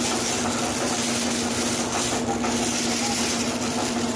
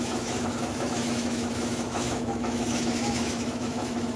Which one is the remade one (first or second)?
second